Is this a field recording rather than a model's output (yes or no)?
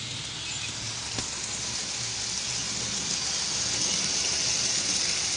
yes